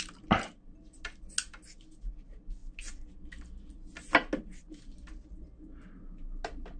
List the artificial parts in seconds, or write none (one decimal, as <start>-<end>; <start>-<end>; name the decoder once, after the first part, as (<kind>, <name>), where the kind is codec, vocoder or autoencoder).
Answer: none